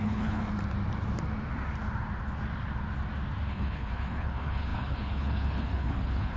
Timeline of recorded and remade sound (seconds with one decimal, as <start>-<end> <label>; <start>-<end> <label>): 0.0-0.4 remade; 0.4-3.5 recorded; 3.5-6.4 remade